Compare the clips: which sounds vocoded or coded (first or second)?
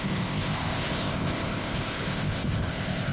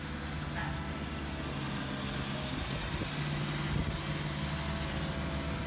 first